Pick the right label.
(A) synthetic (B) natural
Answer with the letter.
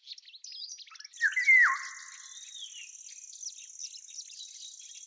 B